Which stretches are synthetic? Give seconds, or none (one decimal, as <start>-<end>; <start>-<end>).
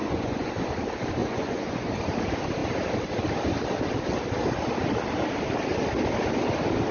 0.0-0.5; 1.2-1.9